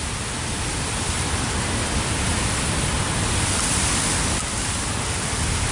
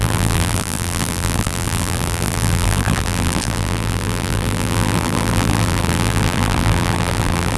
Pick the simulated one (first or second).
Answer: second